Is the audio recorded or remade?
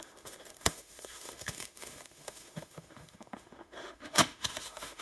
remade